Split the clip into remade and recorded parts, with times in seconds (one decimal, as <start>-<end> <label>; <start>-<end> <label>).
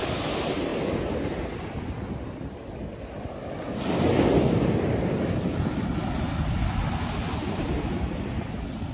0.0-8.9 recorded